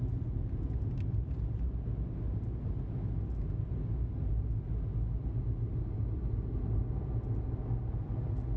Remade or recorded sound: recorded